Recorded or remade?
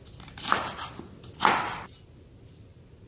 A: recorded